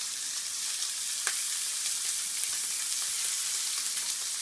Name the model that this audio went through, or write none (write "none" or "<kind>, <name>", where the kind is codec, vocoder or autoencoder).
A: none